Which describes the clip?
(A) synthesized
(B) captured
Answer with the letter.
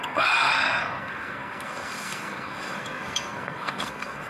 A